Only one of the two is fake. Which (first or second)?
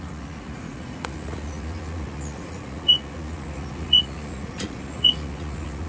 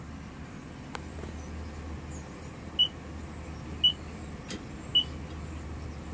first